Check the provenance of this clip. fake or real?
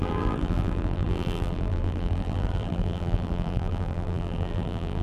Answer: fake